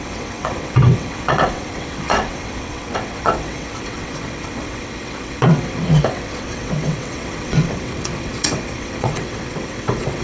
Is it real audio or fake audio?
fake